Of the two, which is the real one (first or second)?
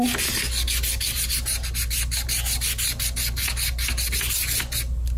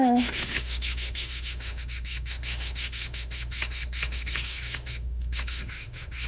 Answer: first